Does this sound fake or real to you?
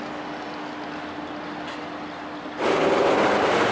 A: real